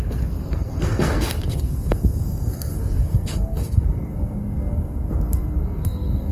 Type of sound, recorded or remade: remade